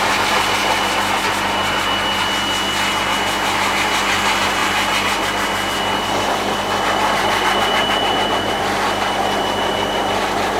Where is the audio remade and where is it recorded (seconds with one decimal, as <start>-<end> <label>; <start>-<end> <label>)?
0.0-10.6 recorded